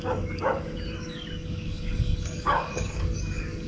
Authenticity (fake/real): fake